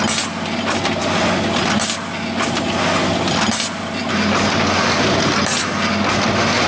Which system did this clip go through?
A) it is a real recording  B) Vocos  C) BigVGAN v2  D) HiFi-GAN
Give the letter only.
A